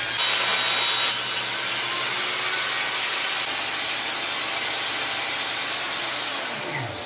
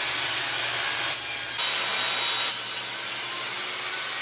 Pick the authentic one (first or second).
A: first